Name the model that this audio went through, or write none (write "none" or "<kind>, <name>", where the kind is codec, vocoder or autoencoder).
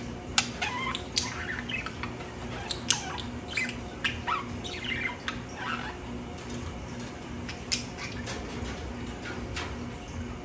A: none